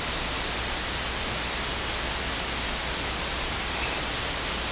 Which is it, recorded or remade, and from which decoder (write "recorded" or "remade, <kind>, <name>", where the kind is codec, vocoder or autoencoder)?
recorded